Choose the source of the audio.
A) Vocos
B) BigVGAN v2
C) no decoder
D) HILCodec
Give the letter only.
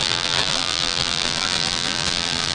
B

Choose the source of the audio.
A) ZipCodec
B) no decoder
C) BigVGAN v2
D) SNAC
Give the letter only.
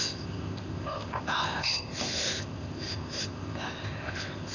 A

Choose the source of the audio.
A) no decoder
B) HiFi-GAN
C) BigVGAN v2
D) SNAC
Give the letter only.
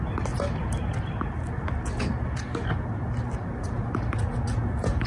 A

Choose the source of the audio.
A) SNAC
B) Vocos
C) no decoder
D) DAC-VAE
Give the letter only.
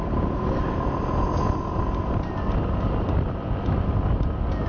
C